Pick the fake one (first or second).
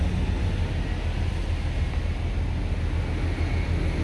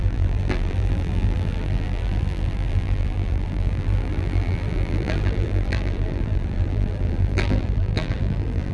second